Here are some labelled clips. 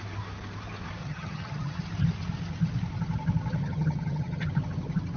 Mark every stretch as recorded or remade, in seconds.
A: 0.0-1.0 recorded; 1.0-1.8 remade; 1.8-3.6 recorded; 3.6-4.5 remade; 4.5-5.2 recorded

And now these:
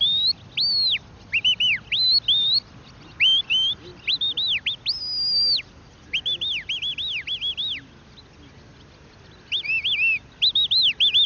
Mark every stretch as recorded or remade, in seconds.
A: 0.0-11.3 recorded

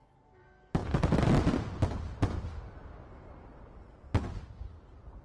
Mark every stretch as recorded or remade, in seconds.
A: 0.0-5.2 recorded